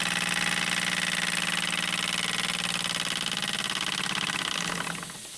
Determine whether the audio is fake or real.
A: real